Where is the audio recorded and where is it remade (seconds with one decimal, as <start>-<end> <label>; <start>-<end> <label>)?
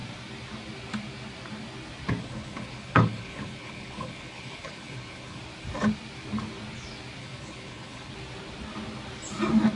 0.0-2.2 recorded; 2.2-5.4 remade; 5.4-7.2 recorded; 7.2-8.1 remade; 8.1-9.8 recorded